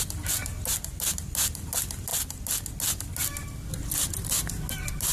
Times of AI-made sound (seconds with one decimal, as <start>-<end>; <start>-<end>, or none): none